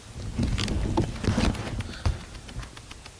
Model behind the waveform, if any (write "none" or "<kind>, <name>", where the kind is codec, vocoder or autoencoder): none